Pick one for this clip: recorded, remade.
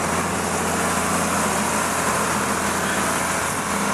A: recorded